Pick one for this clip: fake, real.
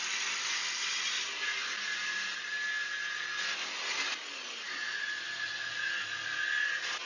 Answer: real